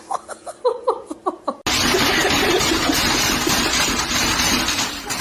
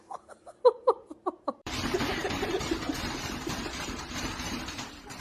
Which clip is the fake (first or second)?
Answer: second